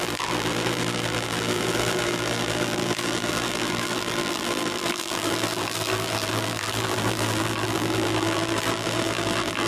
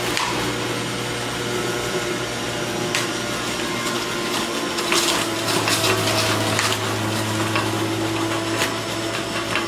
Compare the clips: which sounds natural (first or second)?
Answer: second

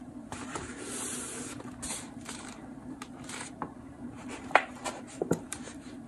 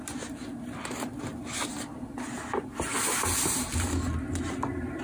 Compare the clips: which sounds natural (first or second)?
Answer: second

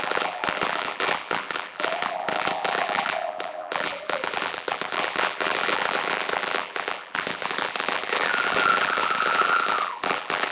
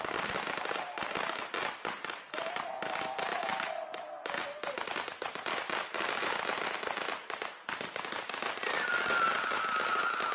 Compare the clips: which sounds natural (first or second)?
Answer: second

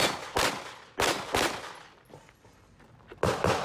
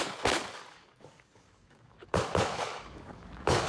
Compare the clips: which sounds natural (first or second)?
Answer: first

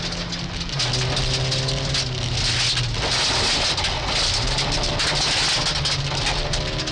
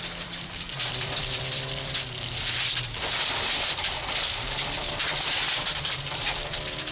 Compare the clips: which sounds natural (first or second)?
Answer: first